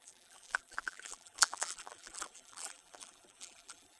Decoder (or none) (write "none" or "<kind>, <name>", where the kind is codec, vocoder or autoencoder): vocoder, BigVGAN v2